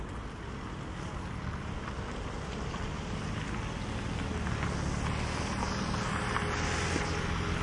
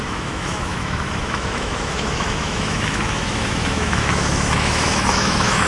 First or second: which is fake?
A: second